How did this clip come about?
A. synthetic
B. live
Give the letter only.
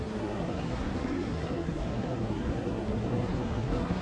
A